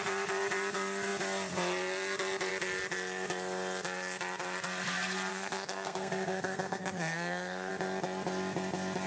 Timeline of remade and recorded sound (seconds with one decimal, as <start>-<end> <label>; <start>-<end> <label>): 0.0-5.3 recorded; 5.3-7.7 remade; 7.7-9.1 recorded